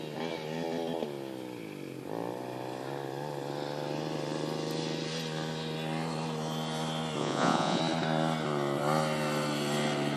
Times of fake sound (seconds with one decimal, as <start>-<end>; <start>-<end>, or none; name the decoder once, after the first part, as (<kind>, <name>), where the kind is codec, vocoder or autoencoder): 7.2-7.8 (vocoder, Vocos)